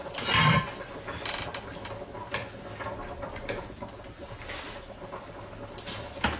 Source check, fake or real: real